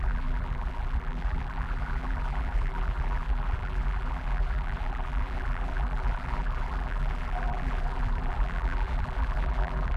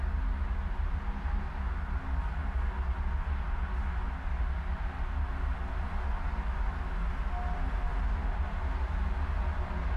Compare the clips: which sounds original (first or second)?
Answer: second